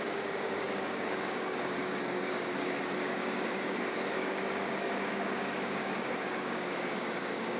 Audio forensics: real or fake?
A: fake